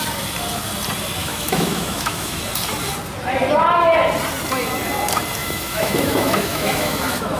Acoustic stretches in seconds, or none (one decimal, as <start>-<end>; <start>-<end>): 0.0-1.2; 2.4-5.4